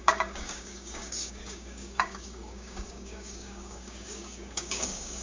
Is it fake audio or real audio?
fake